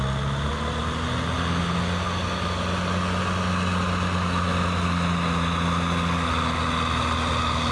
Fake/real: real